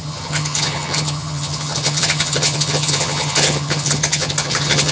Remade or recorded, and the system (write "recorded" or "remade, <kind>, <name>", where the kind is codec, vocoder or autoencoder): remade, vocoder, HiFi-GAN